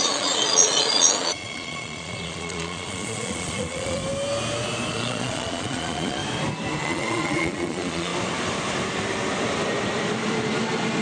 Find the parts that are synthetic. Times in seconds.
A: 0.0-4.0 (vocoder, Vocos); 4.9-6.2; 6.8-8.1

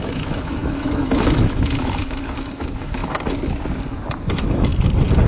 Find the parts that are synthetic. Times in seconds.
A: 0.0-3.0 (autoencoder, DAC-VAE); 4.3-4.7

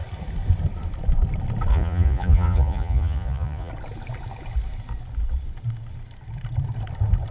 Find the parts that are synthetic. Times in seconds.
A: 1.7-3.7 (vocoder, Vocos)

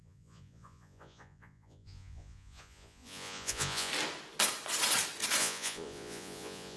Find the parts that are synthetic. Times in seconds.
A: 0.0-3.9 (vocoder, Vocos); 5.4-6.8

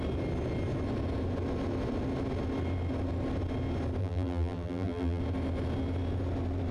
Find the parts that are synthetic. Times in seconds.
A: 4.0-5.2 (vocoder, BigVGAN v2)

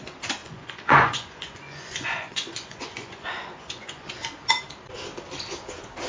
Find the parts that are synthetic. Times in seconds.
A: 0.4-4.1 (vocoder, Vocos)

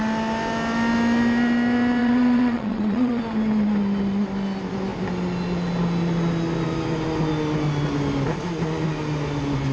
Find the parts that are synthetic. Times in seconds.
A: 2.0-3.2 (vocoder, WaveNeXt)

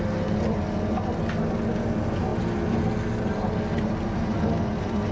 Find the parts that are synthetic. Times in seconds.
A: none